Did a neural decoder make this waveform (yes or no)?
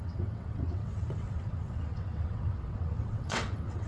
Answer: yes